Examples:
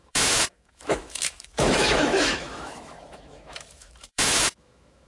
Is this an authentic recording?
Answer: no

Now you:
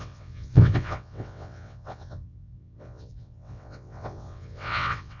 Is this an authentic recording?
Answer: no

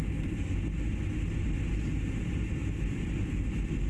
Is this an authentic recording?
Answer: yes